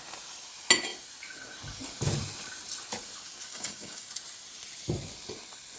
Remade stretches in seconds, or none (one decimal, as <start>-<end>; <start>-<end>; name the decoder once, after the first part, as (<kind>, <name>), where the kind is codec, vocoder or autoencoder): 3.5-4.1 (codec, DAC)